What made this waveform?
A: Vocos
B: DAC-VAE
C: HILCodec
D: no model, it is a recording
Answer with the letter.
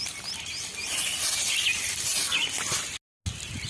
D